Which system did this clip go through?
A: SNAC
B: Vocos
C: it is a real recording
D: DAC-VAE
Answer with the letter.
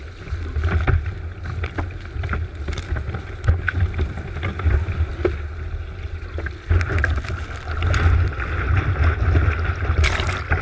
C